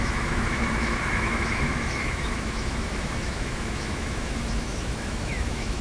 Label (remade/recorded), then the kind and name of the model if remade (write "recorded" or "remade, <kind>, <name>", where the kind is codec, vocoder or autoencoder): remade, autoencoder, DAC-VAE